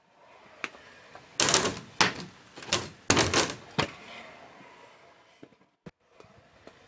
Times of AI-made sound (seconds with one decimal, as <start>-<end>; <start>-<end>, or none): none